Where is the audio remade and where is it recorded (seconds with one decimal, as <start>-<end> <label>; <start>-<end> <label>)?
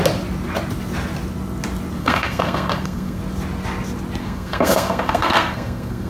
0.0-2.0 recorded; 2.0-3.2 remade; 3.2-4.2 recorded; 4.2-6.1 remade